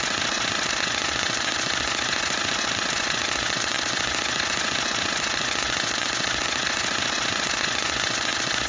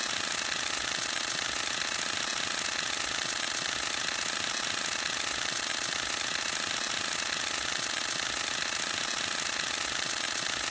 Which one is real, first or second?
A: second